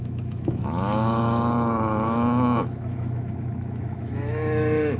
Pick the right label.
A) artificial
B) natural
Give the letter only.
A